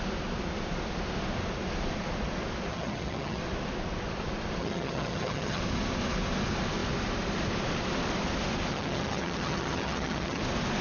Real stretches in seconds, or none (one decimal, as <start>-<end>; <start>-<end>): 0.0-2.7; 3.4-4.6; 5.6-8.7; 10.4-10.8